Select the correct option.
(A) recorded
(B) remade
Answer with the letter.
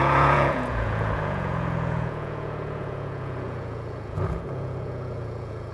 B